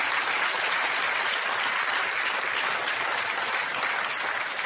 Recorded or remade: recorded